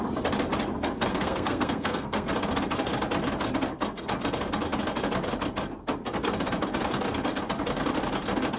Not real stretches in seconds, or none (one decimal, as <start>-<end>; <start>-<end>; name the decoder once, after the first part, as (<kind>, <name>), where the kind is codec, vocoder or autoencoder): 1.1-2.3 (codec, SNAC)